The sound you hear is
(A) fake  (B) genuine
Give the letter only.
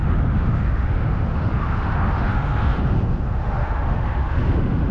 A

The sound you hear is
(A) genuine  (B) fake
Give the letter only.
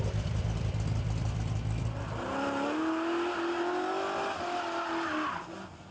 A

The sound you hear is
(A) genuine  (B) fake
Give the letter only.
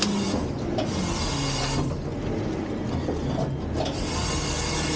A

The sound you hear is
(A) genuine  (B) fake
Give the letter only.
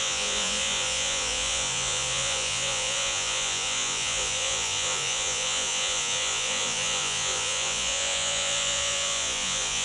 B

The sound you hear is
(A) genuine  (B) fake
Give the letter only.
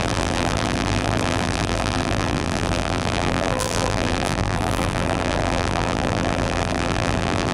B